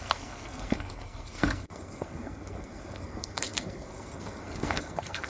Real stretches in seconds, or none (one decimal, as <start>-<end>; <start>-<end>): none

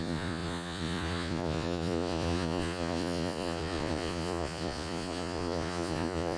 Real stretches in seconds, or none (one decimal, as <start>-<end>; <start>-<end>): none

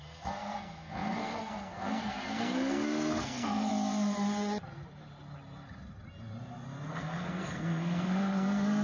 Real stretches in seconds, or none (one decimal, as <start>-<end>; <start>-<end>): 3.7-6.9

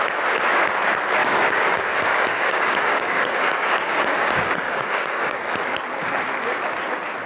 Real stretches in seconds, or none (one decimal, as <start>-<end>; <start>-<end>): 0.0-1.2; 5.6-7.3

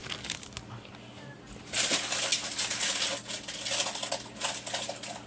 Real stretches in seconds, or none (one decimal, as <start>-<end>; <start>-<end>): 0.9-5.3

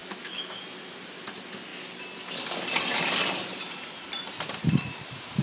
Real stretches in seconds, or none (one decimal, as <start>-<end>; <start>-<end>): 0.6-5.4

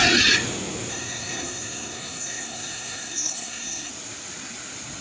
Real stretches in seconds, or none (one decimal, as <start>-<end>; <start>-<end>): 0.0-0.9; 3.9-5.0